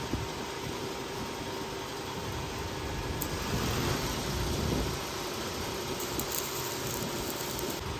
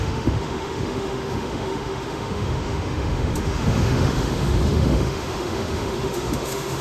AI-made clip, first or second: second